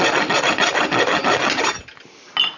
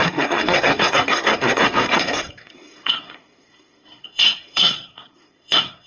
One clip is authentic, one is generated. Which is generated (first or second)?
second